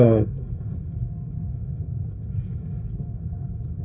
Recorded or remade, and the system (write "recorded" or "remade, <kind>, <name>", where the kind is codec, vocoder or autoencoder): remade, codec, SNAC